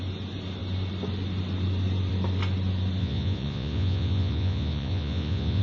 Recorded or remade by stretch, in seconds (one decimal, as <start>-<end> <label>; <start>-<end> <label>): 0.0-3.0 recorded; 3.0-5.6 remade